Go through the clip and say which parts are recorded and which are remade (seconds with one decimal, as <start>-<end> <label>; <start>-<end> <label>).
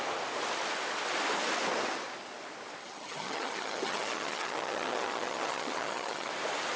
0.0-2.8 recorded; 2.8-6.3 remade; 6.3-6.8 recorded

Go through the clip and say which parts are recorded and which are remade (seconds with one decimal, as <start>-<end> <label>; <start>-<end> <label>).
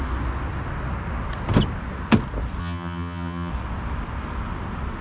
0.0-2.6 recorded; 2.6-3.5 remade; 3.5-5.0 recorded